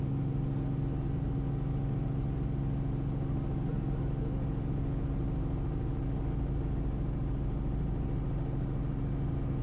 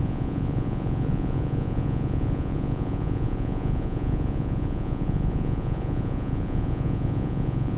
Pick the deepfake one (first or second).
second